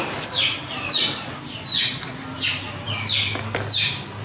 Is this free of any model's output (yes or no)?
yes